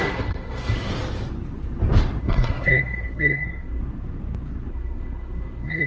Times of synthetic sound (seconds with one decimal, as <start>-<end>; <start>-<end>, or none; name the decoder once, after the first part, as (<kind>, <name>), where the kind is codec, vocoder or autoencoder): 0.0-0.9 (codec, SNAC); 2.2-3.8; 4.7-5.9